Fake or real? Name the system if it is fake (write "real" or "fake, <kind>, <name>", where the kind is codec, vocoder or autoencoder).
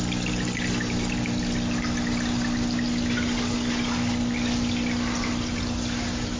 real